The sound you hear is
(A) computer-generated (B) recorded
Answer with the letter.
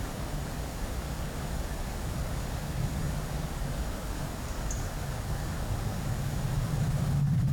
A